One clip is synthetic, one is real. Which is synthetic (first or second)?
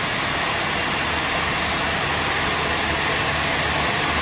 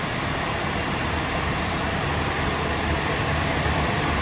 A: second